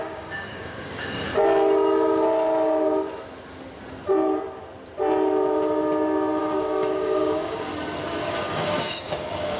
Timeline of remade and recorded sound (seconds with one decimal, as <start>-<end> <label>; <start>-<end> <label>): 0.0-1.3 remade; 1.3-6.4 recorded; 6.4-7.7 remade; 7.7-8.4 recorded; 8.4-9.6 remade